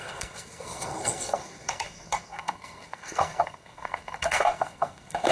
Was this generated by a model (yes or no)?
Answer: yes